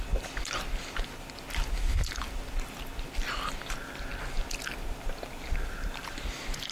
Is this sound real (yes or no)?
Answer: yes